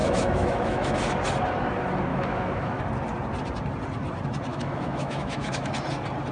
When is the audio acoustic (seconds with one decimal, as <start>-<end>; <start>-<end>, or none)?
1.0-2.1; 2.8-4.5; 5.7-6.3